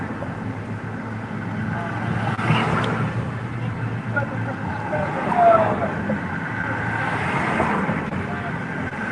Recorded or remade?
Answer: recorded